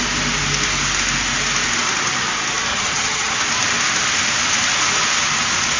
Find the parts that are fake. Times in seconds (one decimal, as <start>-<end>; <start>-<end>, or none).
2.7-3.3